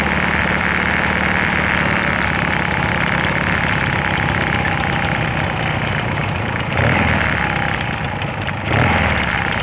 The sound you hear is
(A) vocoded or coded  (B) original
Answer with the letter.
B